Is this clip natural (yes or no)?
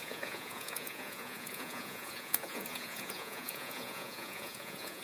no